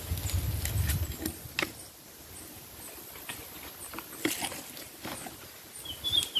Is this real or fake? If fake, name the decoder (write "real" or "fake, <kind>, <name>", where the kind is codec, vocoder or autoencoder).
real